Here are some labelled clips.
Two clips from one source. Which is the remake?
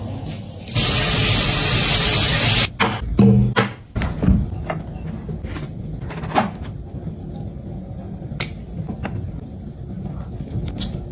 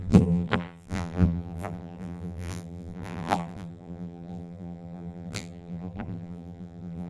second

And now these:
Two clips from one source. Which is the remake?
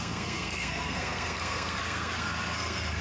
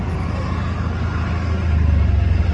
first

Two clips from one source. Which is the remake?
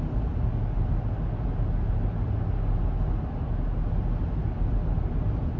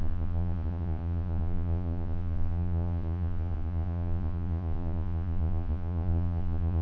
second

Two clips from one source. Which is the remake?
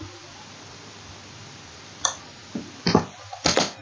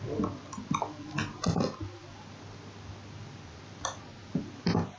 first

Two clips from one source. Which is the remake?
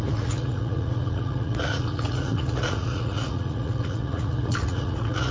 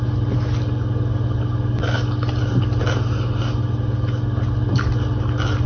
first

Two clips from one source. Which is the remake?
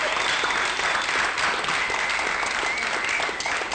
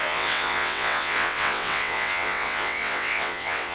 second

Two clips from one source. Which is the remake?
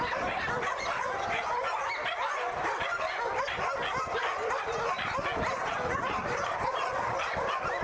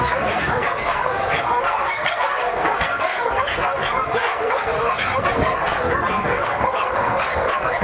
second